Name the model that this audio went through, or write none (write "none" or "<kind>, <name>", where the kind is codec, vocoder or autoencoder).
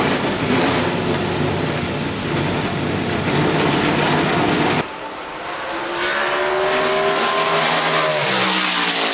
none